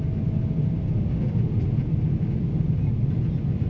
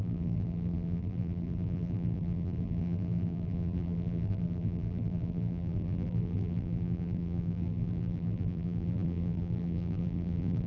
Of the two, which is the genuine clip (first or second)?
first